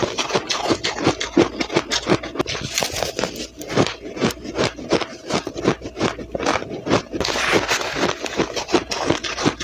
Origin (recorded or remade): recorded